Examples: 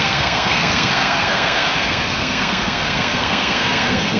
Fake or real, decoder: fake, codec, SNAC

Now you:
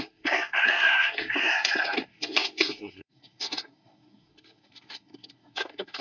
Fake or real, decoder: fake, codec, SNAC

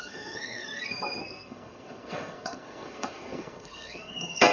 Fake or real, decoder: fake, codec, SNAC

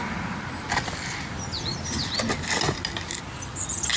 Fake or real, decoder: real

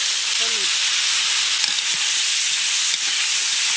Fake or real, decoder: real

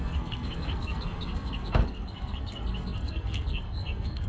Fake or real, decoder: fake, codec, SNAC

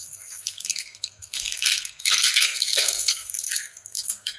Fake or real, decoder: fake, codec, SNAC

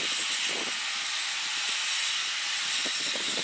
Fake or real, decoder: real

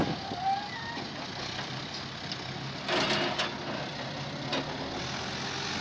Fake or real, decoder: real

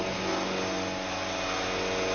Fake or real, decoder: real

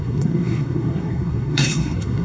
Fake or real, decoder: fake, codec, SNAC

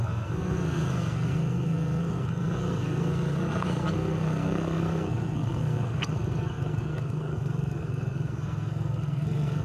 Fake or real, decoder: fake, codec, SNAC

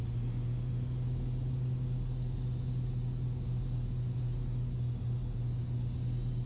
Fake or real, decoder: real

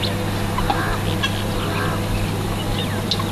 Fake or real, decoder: real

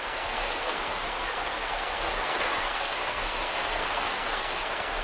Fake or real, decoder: fake, codec, SNAC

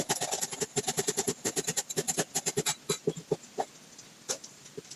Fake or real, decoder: real